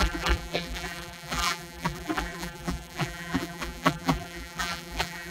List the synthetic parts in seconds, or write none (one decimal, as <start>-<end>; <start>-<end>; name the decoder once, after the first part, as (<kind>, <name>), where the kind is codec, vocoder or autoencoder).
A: 0.0-5.3 (vocoder, BigVGAN v2)